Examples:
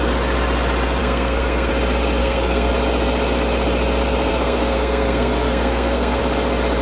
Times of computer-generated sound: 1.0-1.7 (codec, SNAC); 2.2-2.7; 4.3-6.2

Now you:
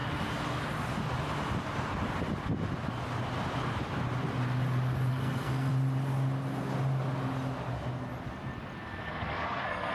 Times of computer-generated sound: 5.1-5.7 (codec, SNAC); 8.8-9.9

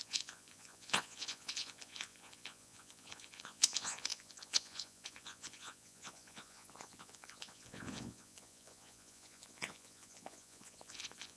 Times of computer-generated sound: 0.0-11.4 (vocoder, Vocos)

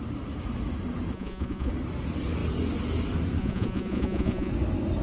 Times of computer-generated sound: 1.1-1.7 (vocoder, Vocos); 3.4-4.5

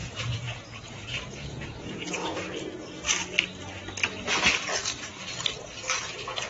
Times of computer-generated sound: 0.0-2.2 (vocoder, Vocos); 6.1-6.5

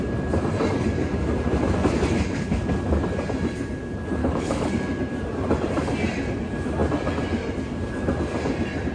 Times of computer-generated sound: 4.2-4.7 (codec, HILCodec)